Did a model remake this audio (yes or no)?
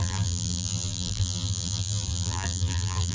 yes